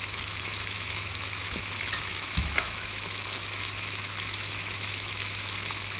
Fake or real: fake